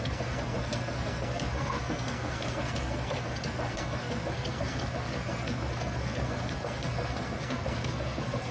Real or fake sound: fake